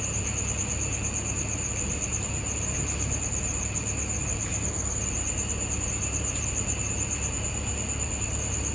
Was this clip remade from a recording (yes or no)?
no